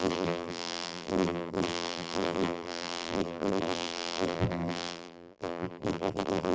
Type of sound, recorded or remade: remade